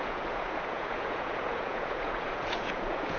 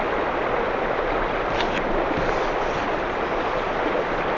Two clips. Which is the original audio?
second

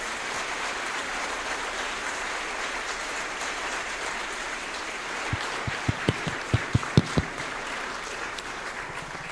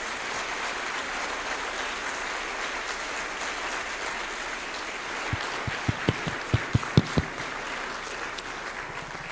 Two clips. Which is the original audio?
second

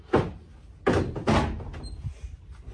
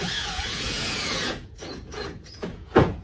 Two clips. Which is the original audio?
first